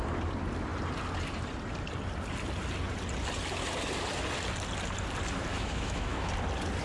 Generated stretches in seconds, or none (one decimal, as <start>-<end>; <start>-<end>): 5.5-6.3